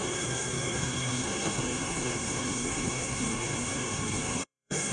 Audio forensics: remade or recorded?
remade